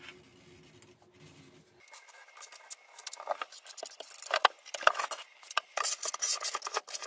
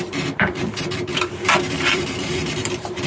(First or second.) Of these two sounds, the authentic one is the first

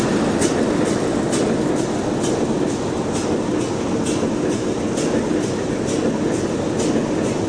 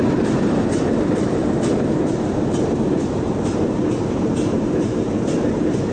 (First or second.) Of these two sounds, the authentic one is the first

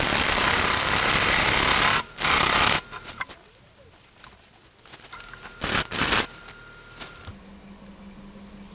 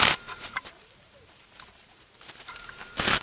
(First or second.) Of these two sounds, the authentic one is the first